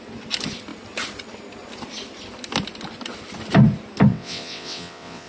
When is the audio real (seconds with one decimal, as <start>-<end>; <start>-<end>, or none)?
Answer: 0.0-4.1